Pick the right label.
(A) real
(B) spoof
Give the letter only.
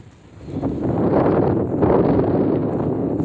A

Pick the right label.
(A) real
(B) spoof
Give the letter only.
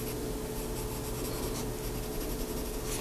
A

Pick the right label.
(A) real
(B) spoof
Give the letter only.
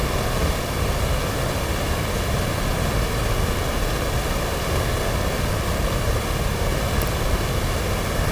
A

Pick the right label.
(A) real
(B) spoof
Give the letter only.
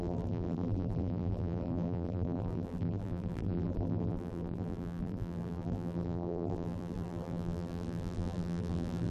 B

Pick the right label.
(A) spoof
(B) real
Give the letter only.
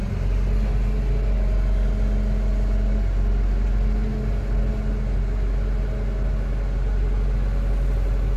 B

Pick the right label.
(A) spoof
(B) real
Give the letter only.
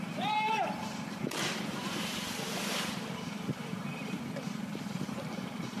A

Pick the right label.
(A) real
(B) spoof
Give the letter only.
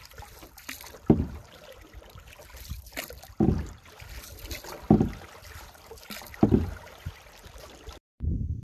B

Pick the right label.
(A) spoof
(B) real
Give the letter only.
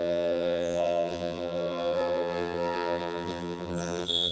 A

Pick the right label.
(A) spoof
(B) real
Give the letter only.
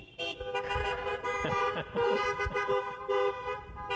A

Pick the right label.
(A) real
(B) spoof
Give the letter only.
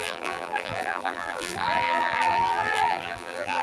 B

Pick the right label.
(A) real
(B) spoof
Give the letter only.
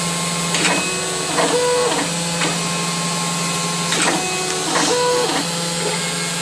A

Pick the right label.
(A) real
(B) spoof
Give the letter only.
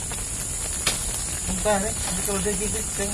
A